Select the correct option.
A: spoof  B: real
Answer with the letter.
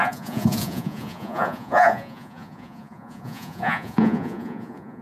A